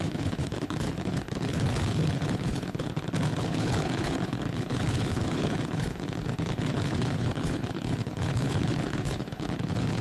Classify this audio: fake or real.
fake